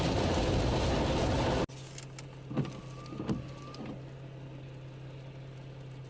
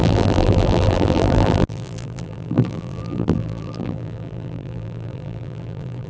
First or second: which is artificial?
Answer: second